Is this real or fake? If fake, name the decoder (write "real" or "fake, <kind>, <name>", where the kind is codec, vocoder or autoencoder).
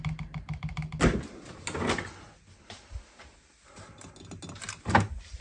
real